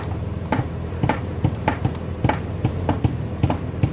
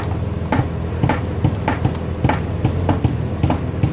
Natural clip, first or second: second